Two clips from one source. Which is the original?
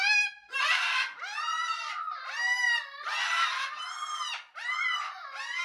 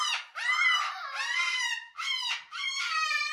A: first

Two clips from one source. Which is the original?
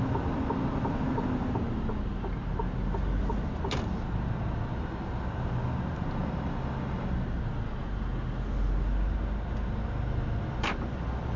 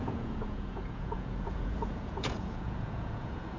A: first